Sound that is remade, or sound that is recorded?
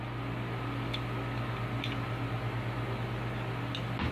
recorded